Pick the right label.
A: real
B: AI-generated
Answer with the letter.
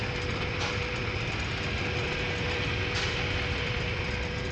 A